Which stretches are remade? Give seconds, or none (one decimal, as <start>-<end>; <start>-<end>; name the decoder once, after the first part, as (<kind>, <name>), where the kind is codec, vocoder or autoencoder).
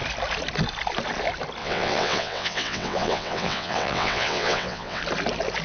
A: 1.6-5.0 (vocoder, WaveNeXt)